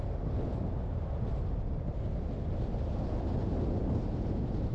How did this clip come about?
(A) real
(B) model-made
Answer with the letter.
A